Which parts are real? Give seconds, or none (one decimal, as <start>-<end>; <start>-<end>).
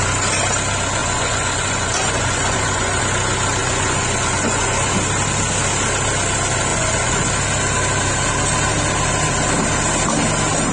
0.0-1.0; 3.0-3.6; 4.9-6.7; 7.3-10.7